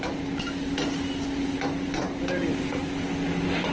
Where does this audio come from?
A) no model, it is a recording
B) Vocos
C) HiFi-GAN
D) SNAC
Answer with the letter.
A